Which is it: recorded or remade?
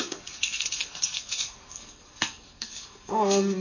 remade